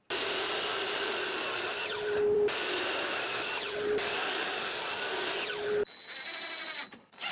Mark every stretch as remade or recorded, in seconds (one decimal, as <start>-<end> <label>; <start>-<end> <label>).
0.0-0.7 recorded; 0.7-5.1 remade; 5.1-7.3 recorded

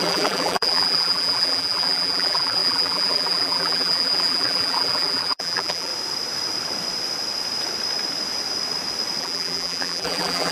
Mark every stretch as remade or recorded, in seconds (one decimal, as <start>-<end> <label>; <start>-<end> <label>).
0.0-5.9 remade; 5.9-9.2 recorded; 9.2-10.5 remade